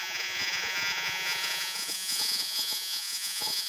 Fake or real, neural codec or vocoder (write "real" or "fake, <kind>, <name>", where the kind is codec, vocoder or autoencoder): fake, vocoder, Vocos